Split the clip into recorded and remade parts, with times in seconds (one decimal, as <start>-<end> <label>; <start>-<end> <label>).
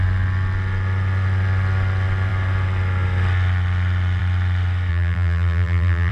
0.0-4.9 recorded; 4.9-6.1 remade